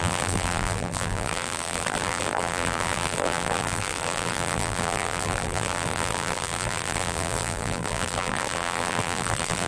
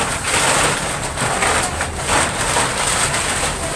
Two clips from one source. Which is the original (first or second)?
second